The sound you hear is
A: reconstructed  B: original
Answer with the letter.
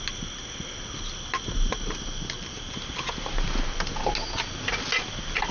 B